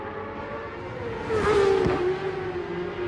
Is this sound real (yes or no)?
yes